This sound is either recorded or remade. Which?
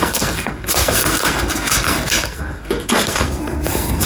remade